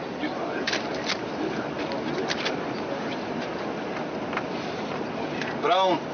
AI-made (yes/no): no